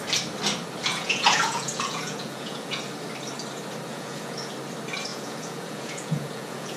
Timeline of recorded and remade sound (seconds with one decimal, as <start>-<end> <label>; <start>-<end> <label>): 0.0-0.9 recorded; 0.9-2.8 remade; 2.8-3.9 recorded; 3.9-4.5 remade; 4.5-5.1 recorded; 5.1-6.8 remade